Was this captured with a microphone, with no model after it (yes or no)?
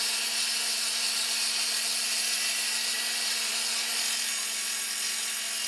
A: yes